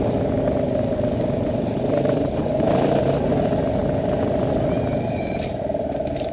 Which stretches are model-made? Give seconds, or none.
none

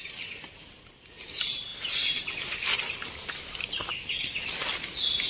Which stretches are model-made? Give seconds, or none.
none

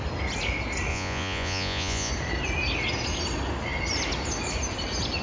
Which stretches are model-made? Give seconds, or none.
0.9-2.1 (vocoder, Vocos)

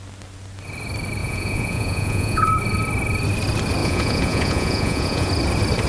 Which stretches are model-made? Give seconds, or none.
1.2-2.5 (vocoder, Vocos); 3.8-5.3